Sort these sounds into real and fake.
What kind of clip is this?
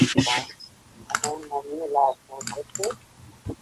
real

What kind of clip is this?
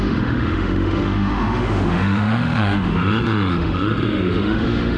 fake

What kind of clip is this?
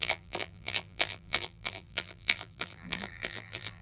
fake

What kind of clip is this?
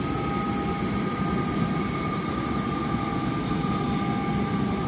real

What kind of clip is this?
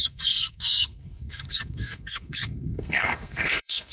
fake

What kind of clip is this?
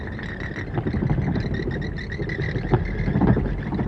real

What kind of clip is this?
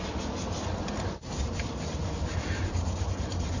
real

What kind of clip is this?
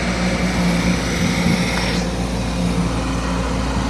real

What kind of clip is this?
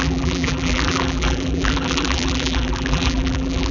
fake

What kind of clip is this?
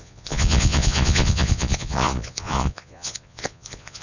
fake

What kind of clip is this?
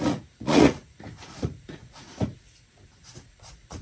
fake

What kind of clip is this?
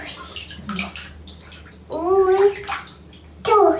real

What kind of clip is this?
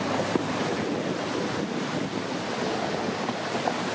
real